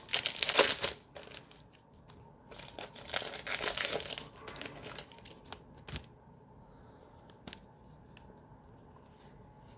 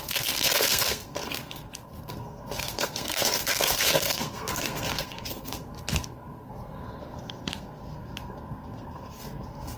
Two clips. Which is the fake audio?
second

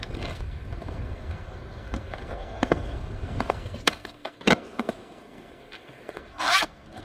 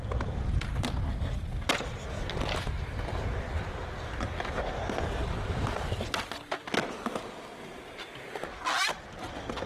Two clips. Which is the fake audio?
first